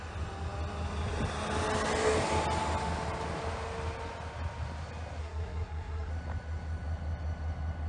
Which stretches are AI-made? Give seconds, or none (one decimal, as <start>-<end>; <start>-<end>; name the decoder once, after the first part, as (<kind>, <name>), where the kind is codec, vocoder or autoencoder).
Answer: 5.2-6.1 (codec, SNAC)